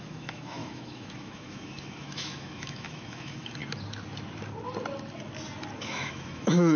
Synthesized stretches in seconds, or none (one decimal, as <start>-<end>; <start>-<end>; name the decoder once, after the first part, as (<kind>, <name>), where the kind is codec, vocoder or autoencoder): 0.0-3.6 (autoencoder, DAC-VAE); 5.8-6.8